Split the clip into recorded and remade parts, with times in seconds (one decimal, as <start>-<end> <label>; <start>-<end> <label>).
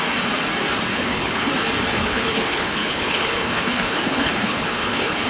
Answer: 0.0-0.9 recorded; 0.9-1.5 remade; 1.5-2.0 recorded; 2.0-5.3 remade